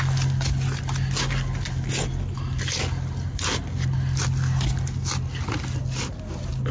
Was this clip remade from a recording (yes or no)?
no